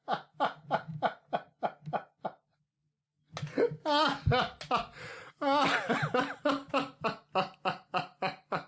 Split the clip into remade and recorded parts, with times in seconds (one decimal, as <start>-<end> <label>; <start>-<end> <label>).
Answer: 0.0-8.7 recorded